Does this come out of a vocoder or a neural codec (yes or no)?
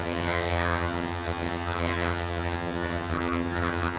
yes